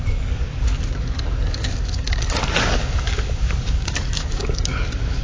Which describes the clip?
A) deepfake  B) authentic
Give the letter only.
A